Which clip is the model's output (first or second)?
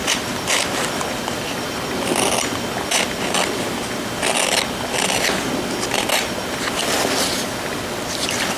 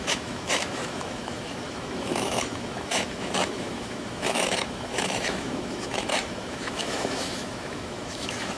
second